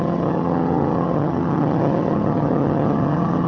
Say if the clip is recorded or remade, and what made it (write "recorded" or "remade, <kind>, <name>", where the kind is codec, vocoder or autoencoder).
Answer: remade, vocoder, HiFi-GAN